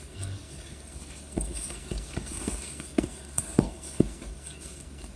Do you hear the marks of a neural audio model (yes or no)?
yes